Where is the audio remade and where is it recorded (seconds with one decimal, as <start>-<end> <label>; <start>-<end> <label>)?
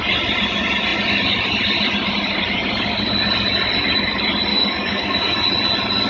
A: 0.0-4.5 recorded; 4.5-5.4 remade; 5.4-6.1 recorded